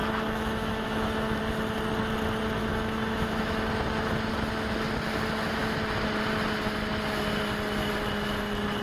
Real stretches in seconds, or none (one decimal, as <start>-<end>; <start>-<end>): 1.4-2.6; 3.7-8.8